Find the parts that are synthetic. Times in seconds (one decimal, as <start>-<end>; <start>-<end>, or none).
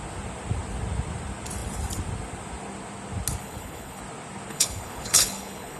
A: 3.4-4.0; 4.5-5.8